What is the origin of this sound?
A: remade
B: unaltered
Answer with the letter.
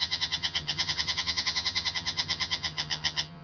A